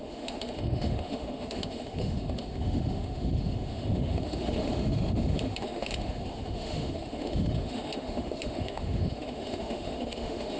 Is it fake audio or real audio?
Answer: fake